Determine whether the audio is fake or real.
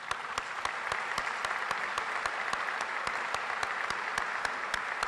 real